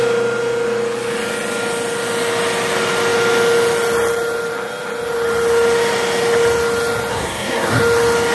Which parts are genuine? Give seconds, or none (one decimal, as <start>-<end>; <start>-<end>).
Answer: 0.0-7.1; 7.8-8.3